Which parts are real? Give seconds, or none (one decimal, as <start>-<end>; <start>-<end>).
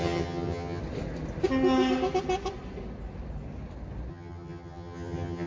0.8-4.1